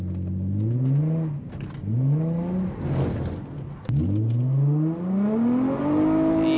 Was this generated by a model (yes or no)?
no